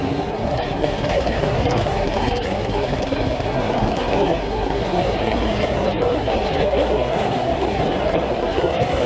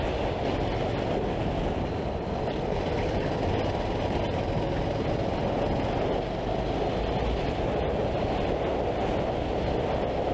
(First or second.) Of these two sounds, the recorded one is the second